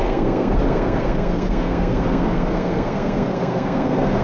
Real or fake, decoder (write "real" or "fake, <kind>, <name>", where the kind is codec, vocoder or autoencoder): fake, codec, SNAC